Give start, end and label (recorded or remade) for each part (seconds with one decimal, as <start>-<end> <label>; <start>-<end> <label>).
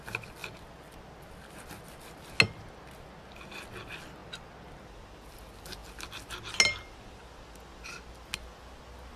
0.0-9.2 recorded